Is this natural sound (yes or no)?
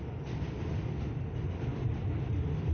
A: yes